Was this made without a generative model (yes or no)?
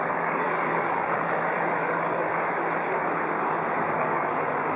no